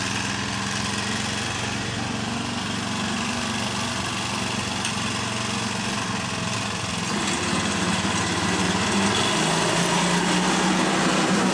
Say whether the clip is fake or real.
real